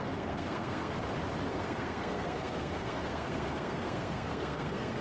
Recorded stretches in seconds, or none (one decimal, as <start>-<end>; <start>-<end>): 1.0-1.5